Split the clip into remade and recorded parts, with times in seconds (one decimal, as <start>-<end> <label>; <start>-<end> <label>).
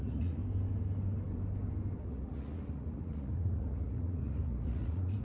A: 0.0-0.4 remade; 0.4-2.0 recorded; 2.0-5.2 remade